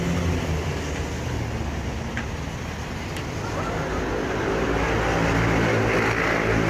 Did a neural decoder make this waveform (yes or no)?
no